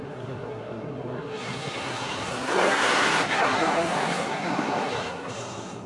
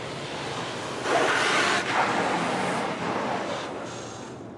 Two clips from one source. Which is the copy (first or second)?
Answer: first